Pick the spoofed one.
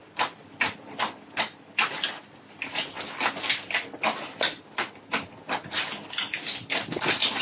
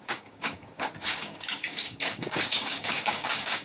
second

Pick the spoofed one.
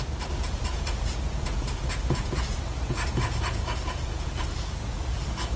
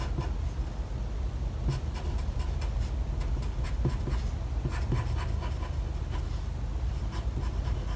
first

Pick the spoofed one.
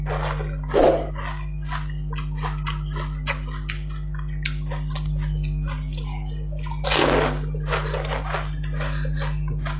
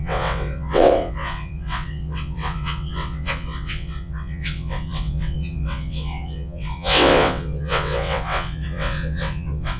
second